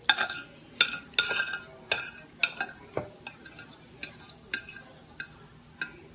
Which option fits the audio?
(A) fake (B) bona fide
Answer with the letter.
B